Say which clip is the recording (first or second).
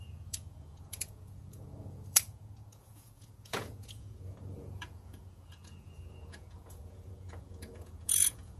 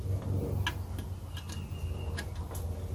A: second